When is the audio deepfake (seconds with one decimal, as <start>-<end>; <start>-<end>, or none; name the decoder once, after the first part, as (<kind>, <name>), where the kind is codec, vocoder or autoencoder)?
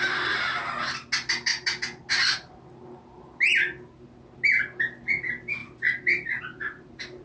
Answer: 5.6-6.4 (vocoder, BigVGAN v2)